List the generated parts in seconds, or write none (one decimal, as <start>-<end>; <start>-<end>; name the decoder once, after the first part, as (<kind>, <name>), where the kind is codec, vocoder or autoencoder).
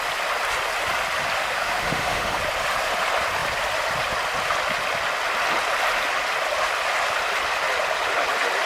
1.4-2.4 (autoencoder, DAC-VAE)